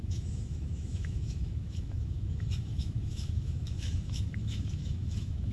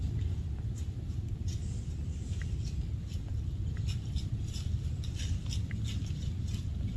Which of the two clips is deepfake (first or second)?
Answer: first